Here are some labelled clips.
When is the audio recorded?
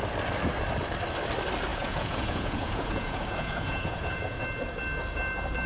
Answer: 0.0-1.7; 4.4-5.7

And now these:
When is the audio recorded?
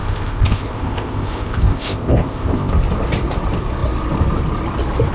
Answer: 2.7-5.1